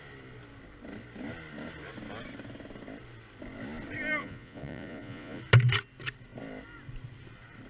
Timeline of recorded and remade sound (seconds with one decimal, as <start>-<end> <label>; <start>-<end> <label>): 0.0-4.2 recorded; 4.2-5.4 remade; 5.4-7.7 recorded